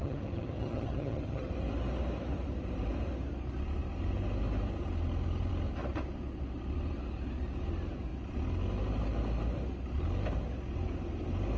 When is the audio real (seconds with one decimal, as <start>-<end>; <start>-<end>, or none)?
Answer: 1.4-11.6